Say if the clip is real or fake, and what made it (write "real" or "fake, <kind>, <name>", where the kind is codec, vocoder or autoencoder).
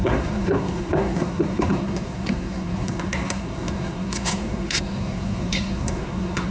fake, codec, SNAC